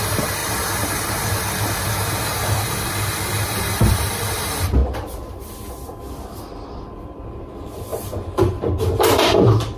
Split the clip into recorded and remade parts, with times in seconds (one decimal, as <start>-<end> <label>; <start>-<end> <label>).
0.0-0.4 remade; 0.4-1.3 recorded; 1.3-4.8 remade; 4.8-6.0 recorded; 6.0-9.8 remade